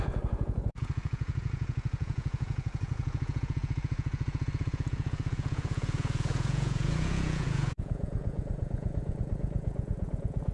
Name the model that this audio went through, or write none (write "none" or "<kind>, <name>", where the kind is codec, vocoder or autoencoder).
vocoder, Vocos